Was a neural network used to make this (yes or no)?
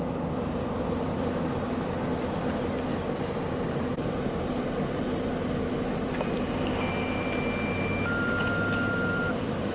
no